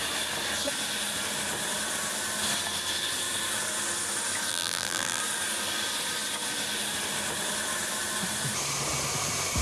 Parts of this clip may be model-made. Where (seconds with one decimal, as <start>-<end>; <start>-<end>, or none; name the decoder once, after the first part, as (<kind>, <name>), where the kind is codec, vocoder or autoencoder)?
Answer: 4.5-5.2 (vocoder, BigVGAN v2)